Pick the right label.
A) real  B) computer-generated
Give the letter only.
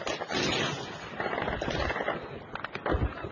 A